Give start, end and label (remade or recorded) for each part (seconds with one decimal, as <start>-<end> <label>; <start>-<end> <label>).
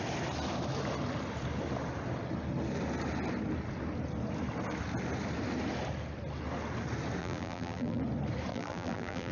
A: 0.0-7.2 recorded; 7.2-8.0 remade; 8.0-8.5 recorded; 8.5-9.3 remade